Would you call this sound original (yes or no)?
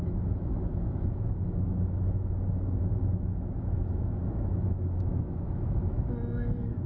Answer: no